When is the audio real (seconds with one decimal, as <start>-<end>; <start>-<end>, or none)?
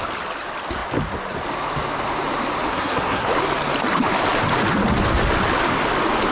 0.0-2.7; 3.3-6.3